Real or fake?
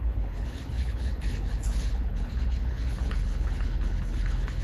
fake